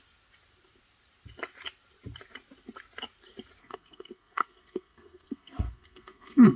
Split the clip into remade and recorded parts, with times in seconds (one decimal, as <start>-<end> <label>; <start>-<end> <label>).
0.0-3.6 recorded; 3.6-6.6 remade